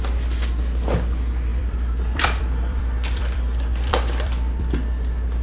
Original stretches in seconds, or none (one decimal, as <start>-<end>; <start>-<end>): 0.0-1.5; 4.7-5.4